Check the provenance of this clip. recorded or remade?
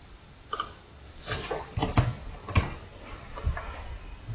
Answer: recorded